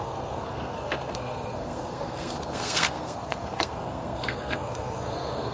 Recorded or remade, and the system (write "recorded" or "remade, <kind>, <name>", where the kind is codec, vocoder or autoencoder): remade, codec, SNAC